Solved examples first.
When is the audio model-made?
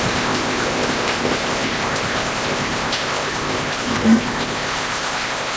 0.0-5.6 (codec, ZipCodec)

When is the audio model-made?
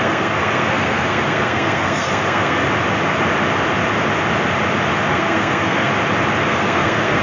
0.0-2.6 (codec, SNAC); 5.1-5.9; 6.4-7.2